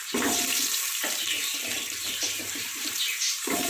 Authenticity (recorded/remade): remade